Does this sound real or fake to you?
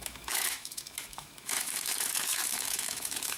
fake